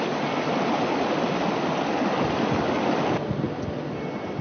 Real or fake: real